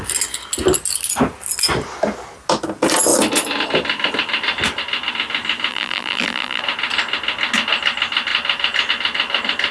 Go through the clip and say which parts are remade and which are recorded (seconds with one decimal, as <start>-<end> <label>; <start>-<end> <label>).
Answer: 0.0-5.7 recorded; 5.7-6.6 remade; 6.6-9.7 recorded